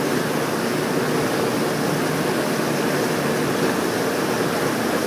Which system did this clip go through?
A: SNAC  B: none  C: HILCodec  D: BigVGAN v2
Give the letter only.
B